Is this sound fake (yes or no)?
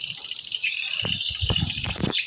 yes